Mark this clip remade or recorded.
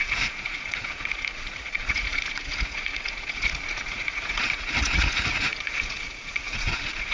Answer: remade